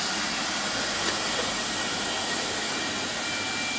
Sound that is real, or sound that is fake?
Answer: real